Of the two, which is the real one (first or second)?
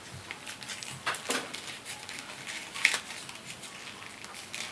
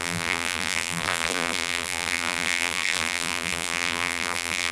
first